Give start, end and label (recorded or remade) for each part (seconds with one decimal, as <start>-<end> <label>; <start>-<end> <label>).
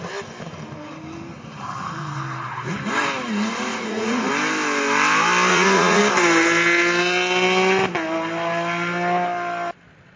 0.0-3.7 recorded; 3.7-4.3 remade; 4.3-5.5 recorded; 5.5-6.0 remade; 6.0-10.2 recorded